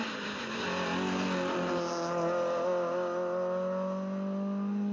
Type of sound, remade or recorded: recorded